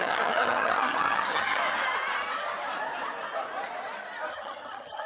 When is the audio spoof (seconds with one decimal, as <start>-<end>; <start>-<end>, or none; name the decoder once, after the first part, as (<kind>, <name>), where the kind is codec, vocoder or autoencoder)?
0.0-1.6 (vocoder, HiFi-GAN); 4.3-5.1